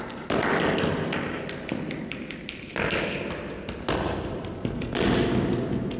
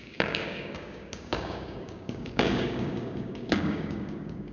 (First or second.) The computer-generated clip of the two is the second